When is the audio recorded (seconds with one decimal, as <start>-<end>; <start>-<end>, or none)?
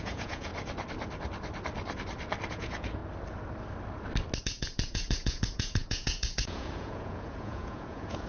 0.5-2.5; 3.0-4.4